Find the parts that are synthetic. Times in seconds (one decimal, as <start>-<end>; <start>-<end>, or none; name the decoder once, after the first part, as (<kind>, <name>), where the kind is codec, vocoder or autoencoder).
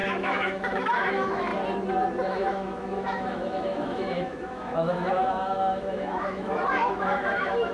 0.0-1.5 (autoencoder, DAC-VAE); 2.3-7.7